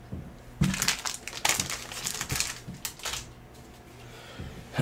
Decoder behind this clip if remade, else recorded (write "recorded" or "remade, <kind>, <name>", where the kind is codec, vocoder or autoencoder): recorded